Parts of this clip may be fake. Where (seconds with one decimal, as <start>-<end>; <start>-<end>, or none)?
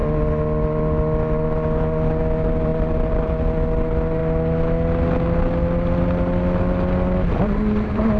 none